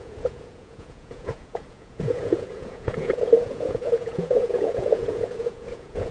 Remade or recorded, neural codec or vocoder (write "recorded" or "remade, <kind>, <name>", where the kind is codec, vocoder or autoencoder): remade, vocoder, Vocos